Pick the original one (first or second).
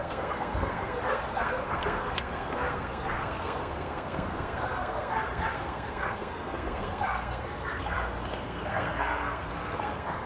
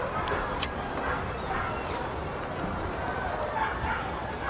second